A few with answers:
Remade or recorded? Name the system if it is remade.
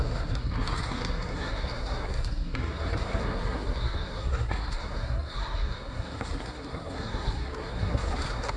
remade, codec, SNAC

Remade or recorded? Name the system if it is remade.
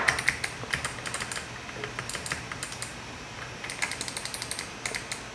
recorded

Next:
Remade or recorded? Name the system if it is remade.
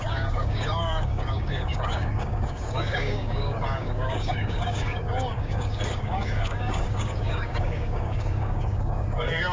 remade, codec, DAC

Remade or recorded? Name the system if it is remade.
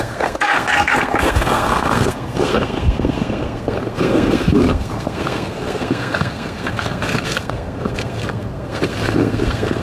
remade, codec, SNAC